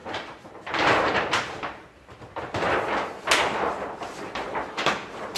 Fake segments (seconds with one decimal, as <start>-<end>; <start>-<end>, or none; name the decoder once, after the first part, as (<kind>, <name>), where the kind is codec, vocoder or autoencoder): 0.0-2.2 (vocoder, BigVGAN v2)